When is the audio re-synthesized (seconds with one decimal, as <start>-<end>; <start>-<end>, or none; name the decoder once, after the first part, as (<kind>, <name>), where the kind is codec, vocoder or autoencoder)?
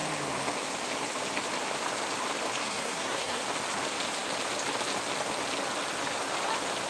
2.6-3.4 (codec, SNAC)